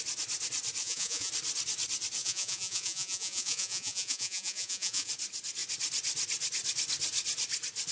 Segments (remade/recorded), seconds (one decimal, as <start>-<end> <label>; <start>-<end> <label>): 0.0-0.8 recorded; 0.8-1.3 remade; 1.3-2.2 recorded; 2.2-5.1 remade; 5.1-7.9 recorded